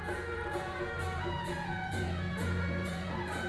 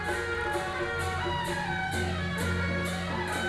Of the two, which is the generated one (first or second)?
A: first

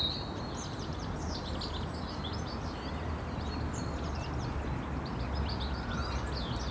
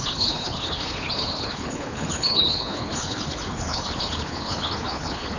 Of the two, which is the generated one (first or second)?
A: second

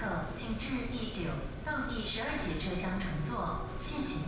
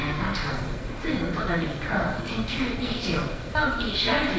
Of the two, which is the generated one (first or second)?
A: second